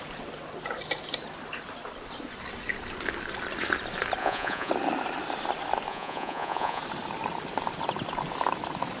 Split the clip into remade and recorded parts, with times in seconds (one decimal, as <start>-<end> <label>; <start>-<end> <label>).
0.0-4.2 recorded; 4.2-4.7 remade; 4.7-5.9 recorded; 5.9-6.8 remade; 6.8-9.0 recorded